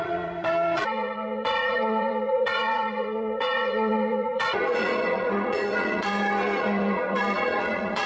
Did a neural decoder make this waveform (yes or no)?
yes